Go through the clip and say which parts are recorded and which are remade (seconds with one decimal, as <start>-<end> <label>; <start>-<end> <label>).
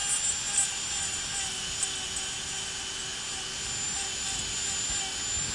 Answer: 0.0-5.5 recorded